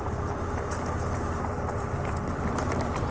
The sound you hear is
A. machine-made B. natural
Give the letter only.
A